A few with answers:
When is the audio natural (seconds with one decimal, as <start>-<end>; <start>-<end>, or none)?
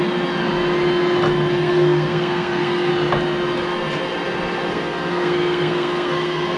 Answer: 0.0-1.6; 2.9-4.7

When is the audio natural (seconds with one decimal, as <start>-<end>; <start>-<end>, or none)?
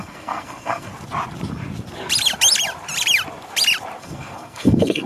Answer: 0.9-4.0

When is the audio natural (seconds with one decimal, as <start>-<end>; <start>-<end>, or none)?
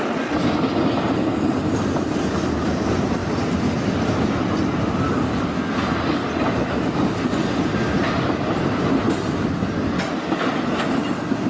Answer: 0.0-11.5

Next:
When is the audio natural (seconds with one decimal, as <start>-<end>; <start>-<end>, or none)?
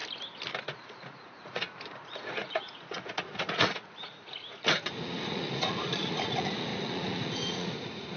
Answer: 0.0-0.6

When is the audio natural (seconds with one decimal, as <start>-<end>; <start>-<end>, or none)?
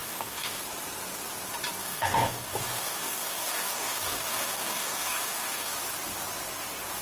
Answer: 0.6-1.8; 5.7-7.0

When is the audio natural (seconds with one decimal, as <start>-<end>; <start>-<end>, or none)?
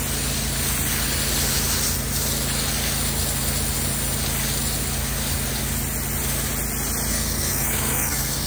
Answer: 0.0-7.1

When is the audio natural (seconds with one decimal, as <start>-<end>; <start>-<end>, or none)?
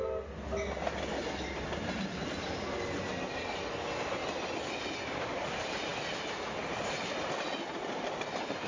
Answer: 0.0-8.7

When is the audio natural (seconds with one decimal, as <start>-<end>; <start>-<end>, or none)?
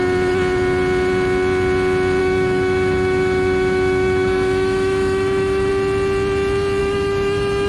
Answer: 0.0-2.2; 5.7-6.8